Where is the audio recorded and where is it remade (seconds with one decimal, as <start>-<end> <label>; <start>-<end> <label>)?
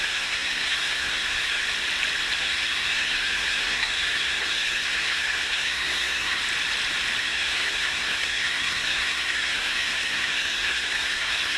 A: 0.0-1.6 remade; 1.6-2.4 recorded; 2.4-6.4 remade; 6.4-7.2 recorded; 7.2-11.6 remade